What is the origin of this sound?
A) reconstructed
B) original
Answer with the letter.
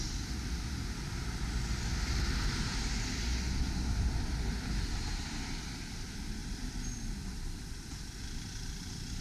B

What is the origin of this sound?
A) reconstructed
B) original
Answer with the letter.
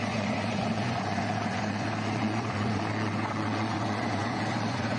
A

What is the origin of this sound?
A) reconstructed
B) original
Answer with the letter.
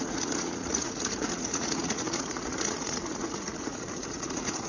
A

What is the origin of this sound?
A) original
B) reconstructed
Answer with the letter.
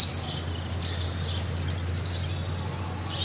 A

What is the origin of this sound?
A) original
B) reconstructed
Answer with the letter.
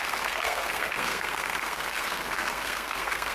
B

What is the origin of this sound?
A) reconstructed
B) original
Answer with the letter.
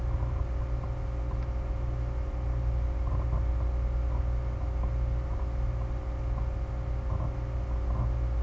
B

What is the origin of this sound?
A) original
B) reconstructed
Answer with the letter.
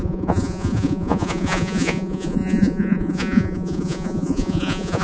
B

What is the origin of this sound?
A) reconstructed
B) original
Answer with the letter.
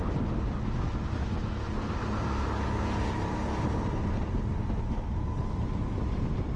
B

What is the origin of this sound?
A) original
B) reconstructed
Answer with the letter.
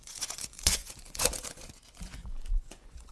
B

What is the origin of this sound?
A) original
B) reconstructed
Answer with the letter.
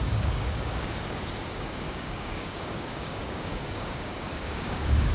B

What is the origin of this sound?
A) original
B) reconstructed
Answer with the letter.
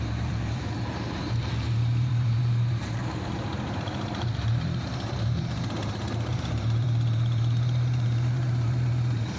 B